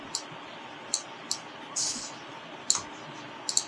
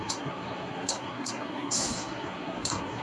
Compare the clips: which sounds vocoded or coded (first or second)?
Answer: second